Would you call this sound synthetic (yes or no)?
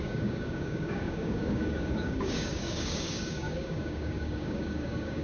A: yes